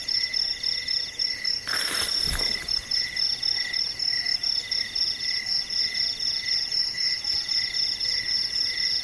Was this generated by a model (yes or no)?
no